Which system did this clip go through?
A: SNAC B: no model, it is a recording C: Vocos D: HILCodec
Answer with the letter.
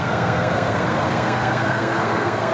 A